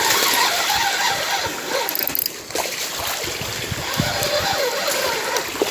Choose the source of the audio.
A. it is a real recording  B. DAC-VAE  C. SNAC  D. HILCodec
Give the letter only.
A